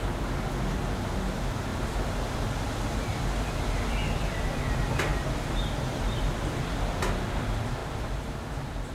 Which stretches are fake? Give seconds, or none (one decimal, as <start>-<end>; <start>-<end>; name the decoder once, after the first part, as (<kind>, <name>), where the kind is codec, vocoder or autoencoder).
1.7-2.3 (vocoder, BigVGAN v2); 3.1-4.4; 5.1-6.5; 7.8-8.9